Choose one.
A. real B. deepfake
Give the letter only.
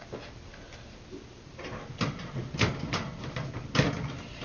A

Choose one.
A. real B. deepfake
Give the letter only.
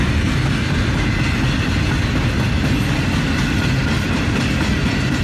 A